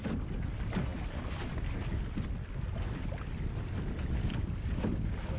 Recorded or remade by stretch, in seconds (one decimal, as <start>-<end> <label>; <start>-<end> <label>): 0.0-5.4 recorded